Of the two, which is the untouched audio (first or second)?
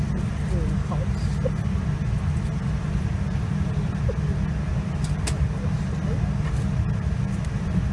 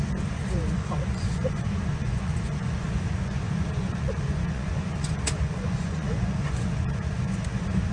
first